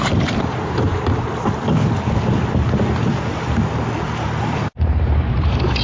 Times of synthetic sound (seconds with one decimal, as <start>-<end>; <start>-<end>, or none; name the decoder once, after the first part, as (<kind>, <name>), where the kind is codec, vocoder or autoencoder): 0.0-0.9 (vocoder, BigVGAN v2); 4.4-5.8